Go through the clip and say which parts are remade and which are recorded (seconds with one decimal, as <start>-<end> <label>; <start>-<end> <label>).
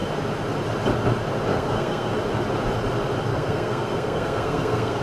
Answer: 0.0-1.5 recorded; 1.5-2.1 remade; 2.1-3.3 recorded; 3.3-5.0 remade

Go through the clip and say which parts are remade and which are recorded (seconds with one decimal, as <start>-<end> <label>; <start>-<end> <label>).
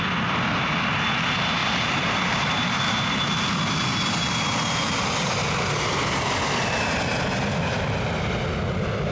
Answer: 0.0-1.6 recorded; 1.6-3.1 remade; 3.1-9.1 recorded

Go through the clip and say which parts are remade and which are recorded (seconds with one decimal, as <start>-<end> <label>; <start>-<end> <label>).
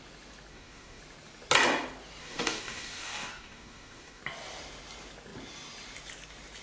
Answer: 0.0-0.5 recorded; 0.5-1.0 remade; 1.0-2.2 recorded; 2.2-4.2 remade; 4.2-6.6 recorded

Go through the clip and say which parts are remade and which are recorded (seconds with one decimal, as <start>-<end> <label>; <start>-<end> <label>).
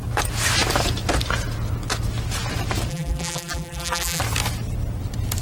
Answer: 0.0-2.9 recorded; 2.9-4.2 remade; 4.2-5.4 recorded